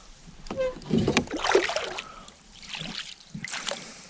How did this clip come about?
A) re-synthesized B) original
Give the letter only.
A